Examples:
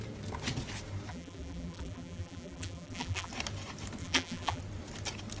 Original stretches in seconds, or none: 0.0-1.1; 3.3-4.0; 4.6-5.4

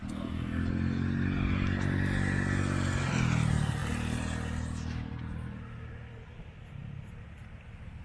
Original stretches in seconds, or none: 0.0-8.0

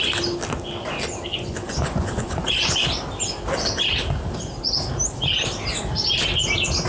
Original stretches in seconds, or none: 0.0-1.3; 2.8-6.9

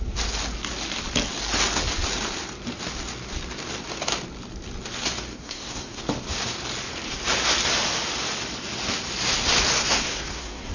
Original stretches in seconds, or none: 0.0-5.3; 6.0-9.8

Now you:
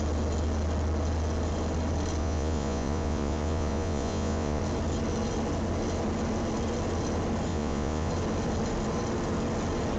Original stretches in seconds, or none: 0.0-2.2; 4.6-7.5; 8.1-10.0

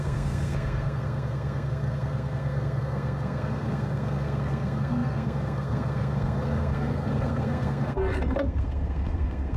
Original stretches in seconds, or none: none

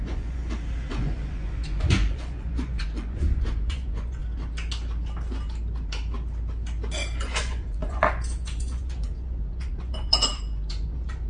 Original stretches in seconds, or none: 0.4-0.9; 4.2-7.2

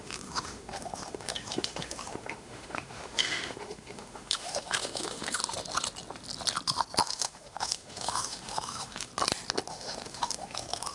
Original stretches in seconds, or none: 5.4-7.0; 9.1-9.7